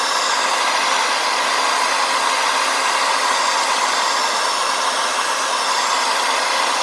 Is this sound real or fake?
real